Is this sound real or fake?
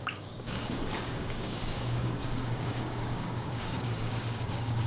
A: fake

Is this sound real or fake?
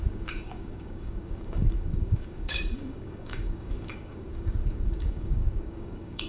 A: fake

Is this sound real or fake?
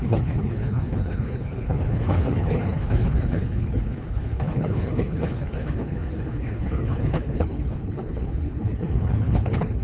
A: fake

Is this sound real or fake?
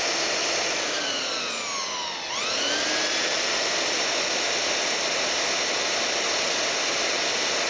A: real